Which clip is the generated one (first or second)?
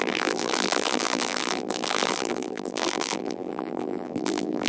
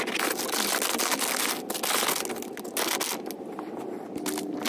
first